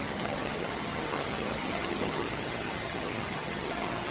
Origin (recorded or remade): remade